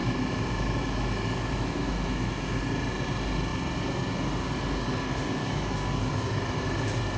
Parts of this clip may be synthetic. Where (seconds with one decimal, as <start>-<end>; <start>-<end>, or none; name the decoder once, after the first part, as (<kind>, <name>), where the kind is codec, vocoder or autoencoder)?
0.0-2.6 (autoencoder, DAC-VAE); 5.4-6.1